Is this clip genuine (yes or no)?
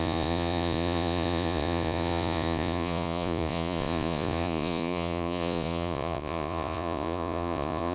no